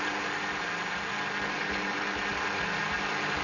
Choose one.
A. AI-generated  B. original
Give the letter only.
B